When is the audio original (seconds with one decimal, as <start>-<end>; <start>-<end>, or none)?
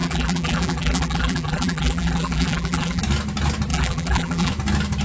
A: 3.0-3.7; 4.5-5.0